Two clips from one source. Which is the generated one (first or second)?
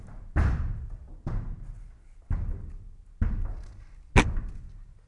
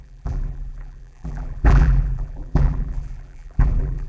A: second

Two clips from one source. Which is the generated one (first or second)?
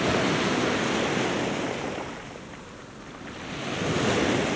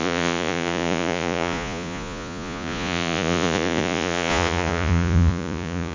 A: second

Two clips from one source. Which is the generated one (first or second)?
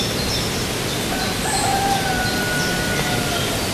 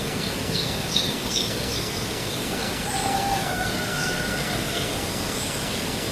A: second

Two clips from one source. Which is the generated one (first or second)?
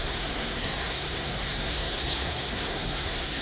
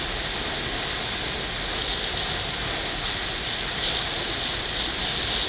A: first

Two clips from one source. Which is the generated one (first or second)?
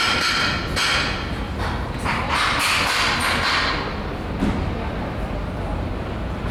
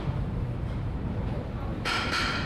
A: second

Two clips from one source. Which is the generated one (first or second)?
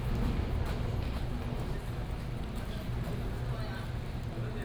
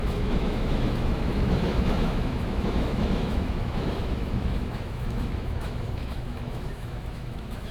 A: second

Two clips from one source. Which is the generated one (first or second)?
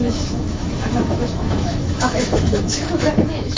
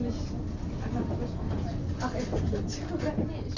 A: first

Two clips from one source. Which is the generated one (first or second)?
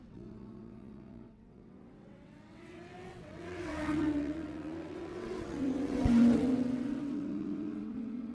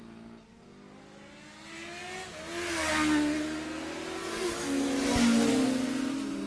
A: first